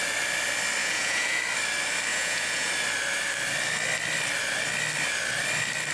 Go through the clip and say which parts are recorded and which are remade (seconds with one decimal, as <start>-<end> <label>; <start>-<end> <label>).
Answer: 0.0-0.8 recorded; 0.8-1.4 remade; 1.4-2.1 recorded; 2.1-2.7 remade; 2.7-5.9 recorded